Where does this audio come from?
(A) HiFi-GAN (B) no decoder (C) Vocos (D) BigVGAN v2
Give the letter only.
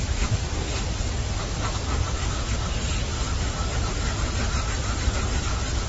D